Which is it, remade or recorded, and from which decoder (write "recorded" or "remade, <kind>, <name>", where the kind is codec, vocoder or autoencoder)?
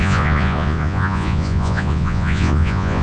remade, vocoder, Vocos